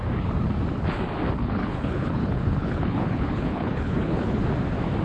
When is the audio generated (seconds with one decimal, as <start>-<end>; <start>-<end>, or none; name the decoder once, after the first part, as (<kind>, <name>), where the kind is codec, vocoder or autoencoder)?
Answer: 1.4-4.4 (codec, HILCodec)